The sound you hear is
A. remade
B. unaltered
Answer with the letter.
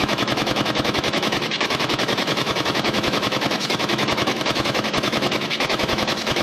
A